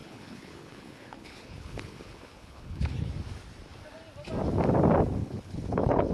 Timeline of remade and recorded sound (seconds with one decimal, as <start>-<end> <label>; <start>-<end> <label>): 0.0-3.1 remade; 3.1-5.2 recorded; 5.2-6.1 remade